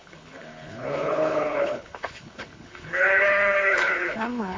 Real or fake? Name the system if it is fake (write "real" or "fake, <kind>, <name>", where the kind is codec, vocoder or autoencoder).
fake, codec, HILCodec